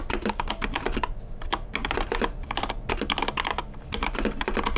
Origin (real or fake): real